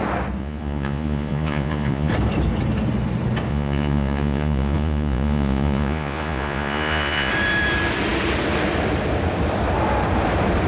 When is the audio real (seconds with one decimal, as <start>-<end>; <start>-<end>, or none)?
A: 0.0-0.4; 2.1-3.5; 7.3-10.7